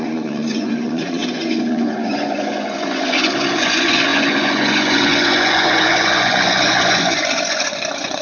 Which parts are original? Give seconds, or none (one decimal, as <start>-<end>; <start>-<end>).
none